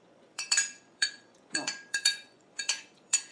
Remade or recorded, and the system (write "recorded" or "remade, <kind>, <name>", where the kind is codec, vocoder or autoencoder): remade, vocoder, Vocos